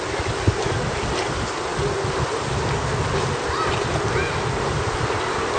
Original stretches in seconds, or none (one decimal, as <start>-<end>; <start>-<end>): 0.0-5.6